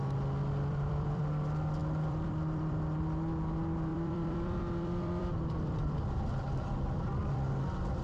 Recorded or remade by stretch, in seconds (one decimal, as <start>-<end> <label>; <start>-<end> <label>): 0.0-0.4 recorded; 0.4-1.2 remade; 1.2-1.8 recorded; 1.8-3.0 remade; 3.0-3.9 recorded; 3.9-7.5 remade; 7.5-8.0 recorded